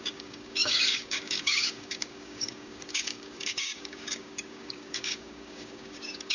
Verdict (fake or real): fake